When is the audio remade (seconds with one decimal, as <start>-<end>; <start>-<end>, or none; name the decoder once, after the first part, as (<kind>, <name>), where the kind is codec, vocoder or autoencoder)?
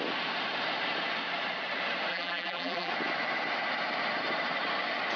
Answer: 2.1-2.9 (vocoder, BigVGAN v2)